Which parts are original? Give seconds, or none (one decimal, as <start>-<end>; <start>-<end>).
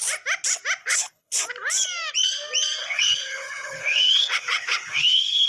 0.0-0.8; 1.4-2.8